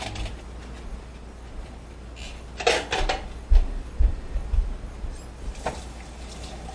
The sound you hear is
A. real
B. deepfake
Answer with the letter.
A